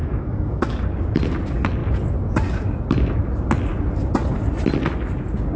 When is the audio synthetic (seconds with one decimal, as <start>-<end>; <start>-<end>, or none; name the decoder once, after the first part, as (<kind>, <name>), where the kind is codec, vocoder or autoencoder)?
0.0-0.8 (autoencoder, DAC-VAE)